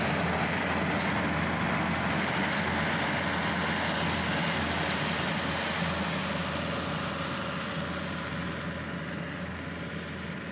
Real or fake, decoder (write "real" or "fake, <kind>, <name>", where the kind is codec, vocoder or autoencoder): real